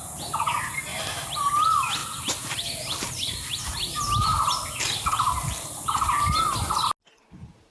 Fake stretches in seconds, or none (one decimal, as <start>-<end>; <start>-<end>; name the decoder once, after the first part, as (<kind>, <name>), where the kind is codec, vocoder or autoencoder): 0.9-1.5 (vocoder, BigVGAN v2); 2.0-3.6; 4.3-6.2